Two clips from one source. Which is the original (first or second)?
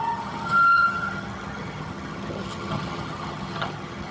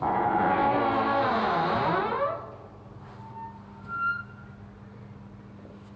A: second